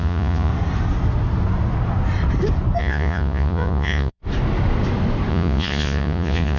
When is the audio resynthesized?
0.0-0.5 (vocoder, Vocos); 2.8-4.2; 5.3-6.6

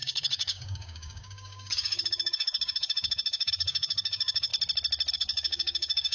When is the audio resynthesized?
0.0-4.5 (codec, DAC); 5.1-6.1

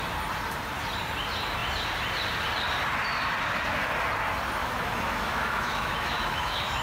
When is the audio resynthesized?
4.6-6.8 (autoencoder, DAC-VAE)

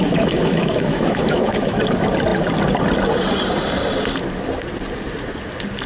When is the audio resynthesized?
0.0-1.8 (autoencoder, DAC-VAE)

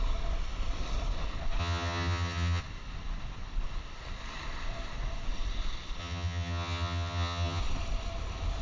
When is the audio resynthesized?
1.6-2.6 (vocoder, HiFi-GAN); 6.0-7.6

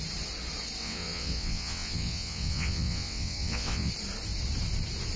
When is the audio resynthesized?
0.8-3.9 (vocoder, WaveNeXt)